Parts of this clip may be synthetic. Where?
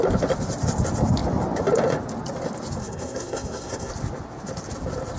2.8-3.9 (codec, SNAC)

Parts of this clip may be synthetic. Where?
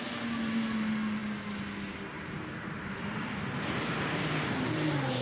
none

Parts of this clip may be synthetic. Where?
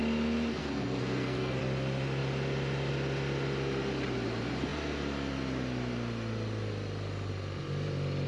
0.6-1.6 (codec, SNAC)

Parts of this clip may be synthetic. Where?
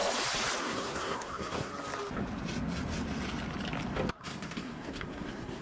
0.6-1.7 (codec, SNAC); 4.1-5.6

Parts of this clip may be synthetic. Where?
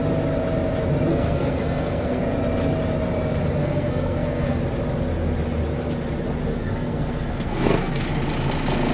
1.1-2.2 (codec, SNAC); 3.6-4.6; 6.5-8.0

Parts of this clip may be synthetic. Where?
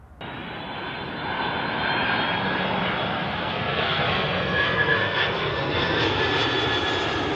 3.1-6.2 (codec, SNAC)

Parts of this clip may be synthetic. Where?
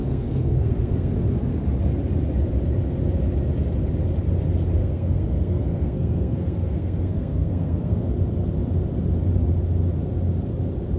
0.0-1.1 (codec, SNAC); 4.8-8.1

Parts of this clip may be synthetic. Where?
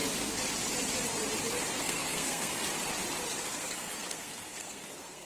1.8-2.5 (codec, SNAC); 3.4-5.3